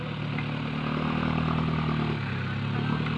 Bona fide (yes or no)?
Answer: yes